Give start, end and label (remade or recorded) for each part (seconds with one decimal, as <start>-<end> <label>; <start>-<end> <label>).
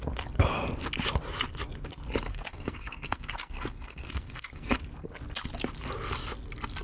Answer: 0.0-2.3 recorded; 2.3-4.8 remade; 4.8-6.8 recorded